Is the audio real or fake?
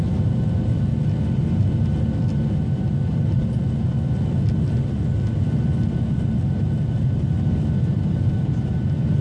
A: real